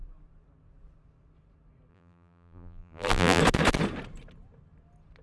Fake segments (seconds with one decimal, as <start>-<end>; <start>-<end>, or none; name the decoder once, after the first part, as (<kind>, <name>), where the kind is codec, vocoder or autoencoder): 1.9-3.4 (vocoder, BigVGAN v2)